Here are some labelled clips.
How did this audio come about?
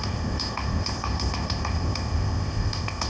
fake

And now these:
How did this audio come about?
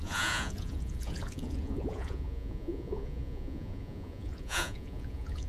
fake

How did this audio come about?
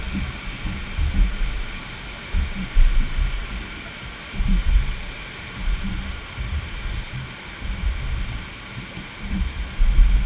real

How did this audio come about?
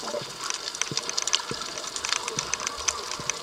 real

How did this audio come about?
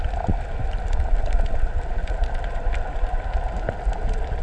real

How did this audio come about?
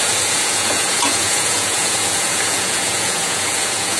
fake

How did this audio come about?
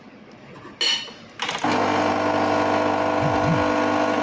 real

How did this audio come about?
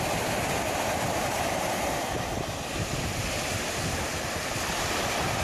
real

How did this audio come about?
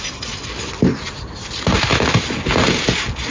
real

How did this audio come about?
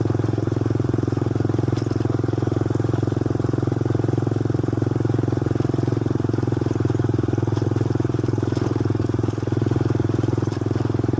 fake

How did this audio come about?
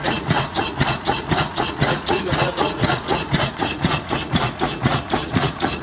fake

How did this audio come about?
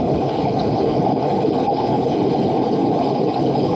fake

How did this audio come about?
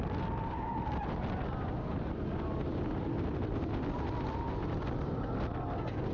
real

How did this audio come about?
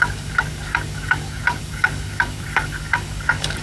fake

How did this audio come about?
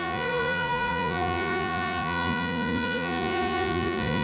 fake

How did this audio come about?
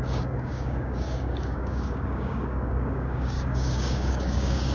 fake